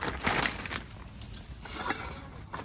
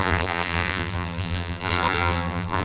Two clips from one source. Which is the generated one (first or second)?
second